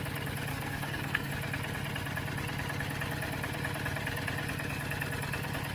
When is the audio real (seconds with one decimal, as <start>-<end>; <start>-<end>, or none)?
0.0-0.5; 1.3-5.7